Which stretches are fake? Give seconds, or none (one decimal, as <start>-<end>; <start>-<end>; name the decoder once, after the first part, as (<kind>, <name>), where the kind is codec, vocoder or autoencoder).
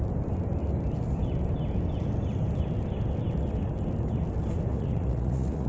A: 4.7-5.7 (vocoder, Vocos)